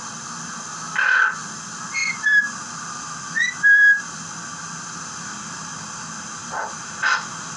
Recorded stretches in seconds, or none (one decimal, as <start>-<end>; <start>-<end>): 0.0-7.6